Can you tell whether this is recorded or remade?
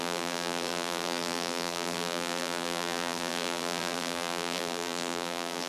remade